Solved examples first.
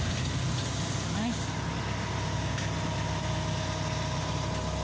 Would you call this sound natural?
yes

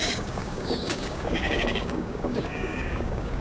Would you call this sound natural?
no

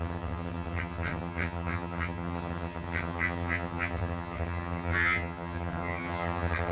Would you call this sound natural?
no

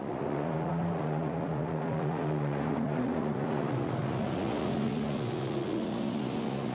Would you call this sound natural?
no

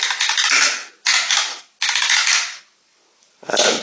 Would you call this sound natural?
yes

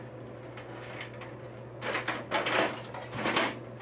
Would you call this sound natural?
yes